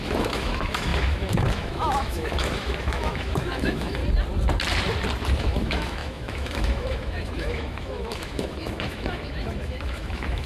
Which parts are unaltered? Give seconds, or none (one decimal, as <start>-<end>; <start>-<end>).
4.0-5.4

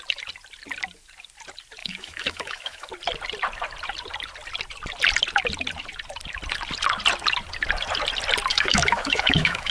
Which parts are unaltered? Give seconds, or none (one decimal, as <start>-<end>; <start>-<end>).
0.0-1.8; 2.9-8.5

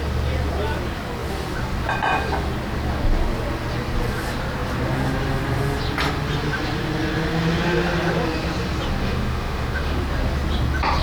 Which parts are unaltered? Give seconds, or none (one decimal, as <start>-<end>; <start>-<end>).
0.0-9.0; 10.0-11.0

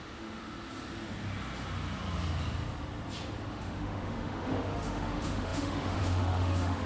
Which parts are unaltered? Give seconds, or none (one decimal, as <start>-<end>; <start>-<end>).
0.4-3.5

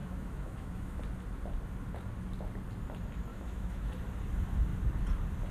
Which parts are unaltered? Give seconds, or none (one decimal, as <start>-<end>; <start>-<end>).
1.0-3.3; 3.9-5.5

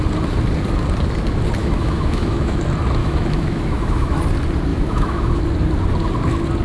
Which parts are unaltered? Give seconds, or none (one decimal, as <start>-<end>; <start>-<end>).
0.0-1.6; 2.6-3.0; 4.2-4.7; 5.4-6.6

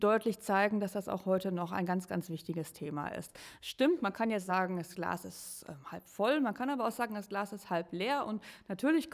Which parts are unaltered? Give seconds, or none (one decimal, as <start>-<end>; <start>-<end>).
0.0-3.3; 4.5-9.1

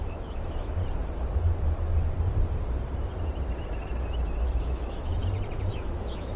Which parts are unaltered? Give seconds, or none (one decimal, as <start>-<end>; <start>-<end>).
0.8-4.6; 5.1-5.7